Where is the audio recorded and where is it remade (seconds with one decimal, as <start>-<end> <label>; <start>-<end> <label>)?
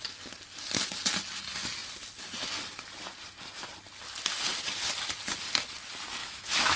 0.0-6.2 recorded; 6.2-6.8 remade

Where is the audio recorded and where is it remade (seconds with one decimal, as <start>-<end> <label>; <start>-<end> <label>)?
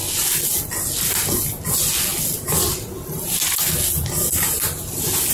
0.0-5.3 recorded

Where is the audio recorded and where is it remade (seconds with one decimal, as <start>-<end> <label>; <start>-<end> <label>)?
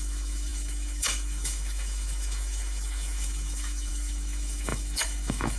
0.0-5.6 remade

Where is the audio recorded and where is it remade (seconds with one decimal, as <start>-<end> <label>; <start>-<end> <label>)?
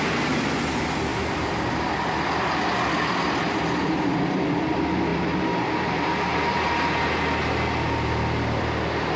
0.0-9.2 recorded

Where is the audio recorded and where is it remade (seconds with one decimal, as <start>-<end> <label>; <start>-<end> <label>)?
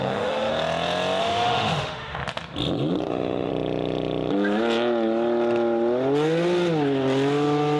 0.0-0.5 remade; 0.5-1.2 recorded; 1.2-2.2 remade; 2.2-3.1 recorded; 3.1-3.5 remade; 3.5-7.8 recorded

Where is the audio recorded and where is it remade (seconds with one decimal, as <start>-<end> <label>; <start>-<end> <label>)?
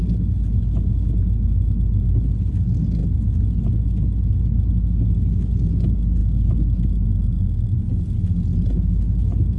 0.0-9.6 recorded